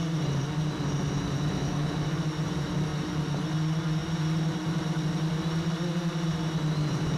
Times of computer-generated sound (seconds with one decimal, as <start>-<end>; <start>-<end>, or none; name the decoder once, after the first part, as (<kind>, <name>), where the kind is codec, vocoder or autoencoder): 0.0-7.2 (vocoder, BigVGAN v2)